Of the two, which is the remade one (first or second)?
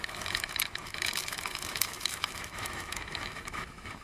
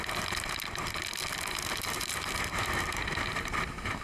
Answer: first